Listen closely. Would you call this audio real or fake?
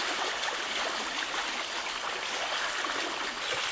real